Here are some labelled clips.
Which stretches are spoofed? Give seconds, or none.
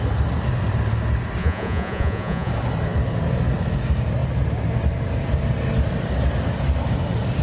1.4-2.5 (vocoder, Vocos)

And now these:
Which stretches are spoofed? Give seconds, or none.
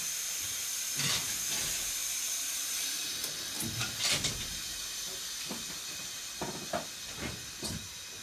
none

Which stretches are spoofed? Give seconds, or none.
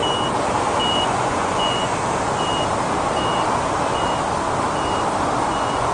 0.9-1.9 (vocoder, Vocos); 5.4-5.9